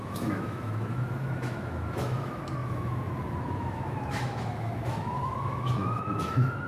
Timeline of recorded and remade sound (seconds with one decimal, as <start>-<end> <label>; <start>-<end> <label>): 0.0-6.7 remade